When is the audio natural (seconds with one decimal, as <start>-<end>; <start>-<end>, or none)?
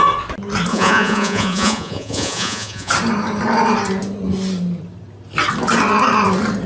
0.0-0.7; 2.9-6.7